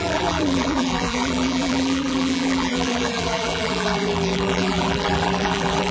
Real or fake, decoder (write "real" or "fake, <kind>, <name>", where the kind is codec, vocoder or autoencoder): fake, vocoder, BigVGAN v2